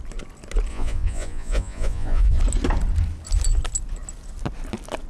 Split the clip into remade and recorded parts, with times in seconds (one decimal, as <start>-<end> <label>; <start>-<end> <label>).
0.0-0.7 recorded; 0.7-2.4 remade; 2.4-5.1 recorded